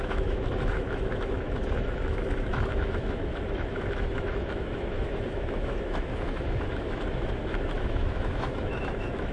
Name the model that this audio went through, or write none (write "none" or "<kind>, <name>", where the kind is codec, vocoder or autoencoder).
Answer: autoencoder, DAC-VAE